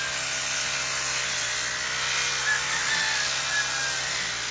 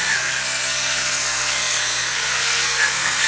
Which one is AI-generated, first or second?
second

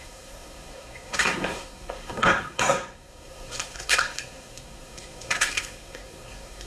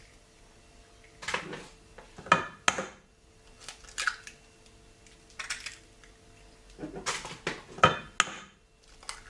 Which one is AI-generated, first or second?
first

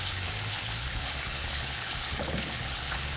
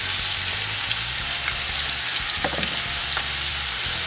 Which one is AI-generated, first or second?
first